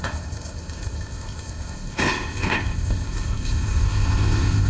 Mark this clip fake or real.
fake